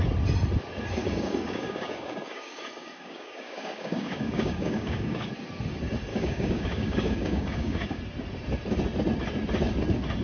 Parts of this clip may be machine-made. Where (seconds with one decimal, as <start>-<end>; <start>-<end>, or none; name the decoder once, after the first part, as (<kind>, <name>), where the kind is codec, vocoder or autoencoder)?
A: 1.0-5.3 (codec, DAC); 6.1-8.0